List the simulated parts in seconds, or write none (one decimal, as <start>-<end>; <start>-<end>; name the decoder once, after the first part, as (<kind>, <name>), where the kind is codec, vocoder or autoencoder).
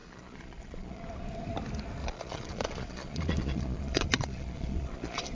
0.0-1.0 (vocoder, Vocos); 2.0-5.3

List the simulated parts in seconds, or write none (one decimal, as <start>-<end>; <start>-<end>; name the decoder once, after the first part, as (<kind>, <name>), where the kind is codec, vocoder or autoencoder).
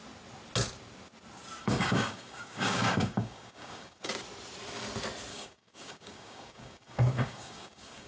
1.6-4.1 (codec, DAC); 5.3-8.1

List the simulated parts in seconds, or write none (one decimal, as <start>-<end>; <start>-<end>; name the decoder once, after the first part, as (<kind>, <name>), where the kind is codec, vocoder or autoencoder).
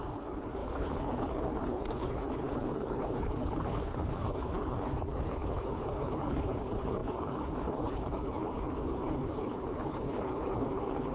0.0-11.1 (codec, HILCodec)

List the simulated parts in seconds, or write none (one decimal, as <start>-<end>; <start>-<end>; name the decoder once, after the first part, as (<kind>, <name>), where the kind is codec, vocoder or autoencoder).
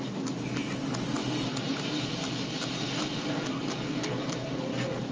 none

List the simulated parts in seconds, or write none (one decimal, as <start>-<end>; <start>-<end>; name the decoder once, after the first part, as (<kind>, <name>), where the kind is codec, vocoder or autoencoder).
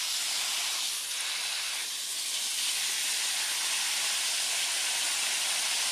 none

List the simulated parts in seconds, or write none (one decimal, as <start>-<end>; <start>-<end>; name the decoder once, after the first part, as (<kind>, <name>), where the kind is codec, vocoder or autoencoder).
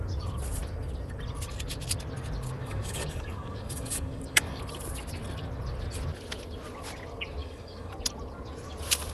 2.6-4.6 (codec, DAC); 7.4-7.9